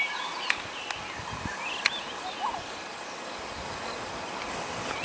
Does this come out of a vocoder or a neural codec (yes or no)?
no